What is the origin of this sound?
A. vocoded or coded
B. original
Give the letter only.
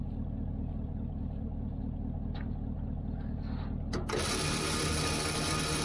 B